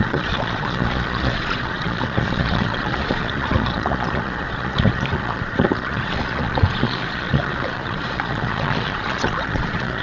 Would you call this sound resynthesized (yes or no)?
yes